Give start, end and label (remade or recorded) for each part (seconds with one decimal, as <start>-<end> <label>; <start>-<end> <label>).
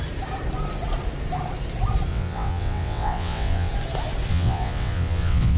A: 0.0-2.1 recorded; 2.1-3.7 remade; 3.7-4.3 recorded; 4.3-5.6 remade